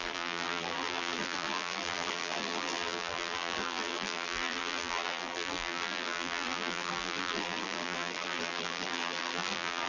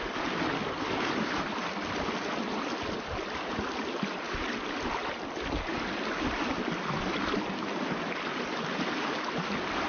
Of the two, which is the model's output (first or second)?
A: first